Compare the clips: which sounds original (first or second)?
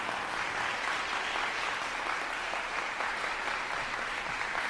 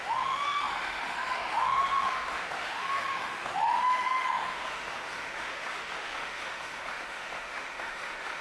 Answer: first